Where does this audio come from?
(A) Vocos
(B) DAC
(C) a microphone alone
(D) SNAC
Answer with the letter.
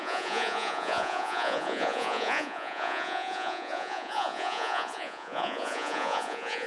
A